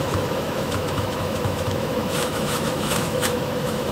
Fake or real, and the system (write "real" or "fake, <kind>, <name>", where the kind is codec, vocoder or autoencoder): fake, autoencoder, DAC-VAE